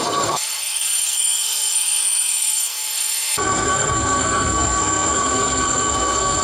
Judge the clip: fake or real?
fake